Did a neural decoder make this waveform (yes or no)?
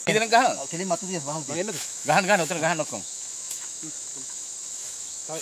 yes